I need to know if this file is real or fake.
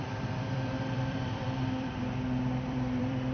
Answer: fake